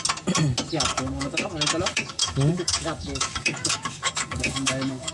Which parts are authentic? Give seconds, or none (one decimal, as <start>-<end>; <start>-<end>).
0.0-0.9; 1.5-1.9